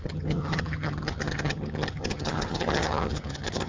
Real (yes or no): no